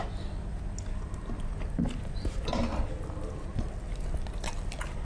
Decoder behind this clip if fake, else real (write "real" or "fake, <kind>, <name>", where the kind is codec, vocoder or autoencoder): real